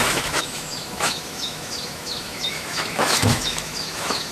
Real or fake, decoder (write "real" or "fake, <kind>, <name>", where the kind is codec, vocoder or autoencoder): fake, autoencoder, DAC-VAE